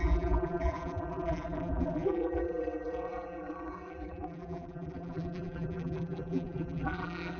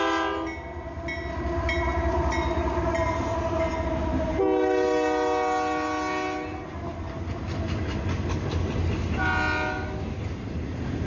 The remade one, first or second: first